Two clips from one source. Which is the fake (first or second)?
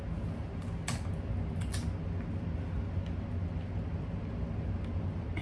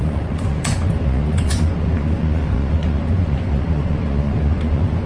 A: second